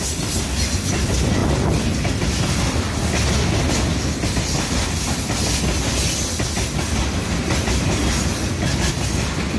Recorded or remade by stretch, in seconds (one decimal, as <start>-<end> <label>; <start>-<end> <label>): 0.0-9.6 recorded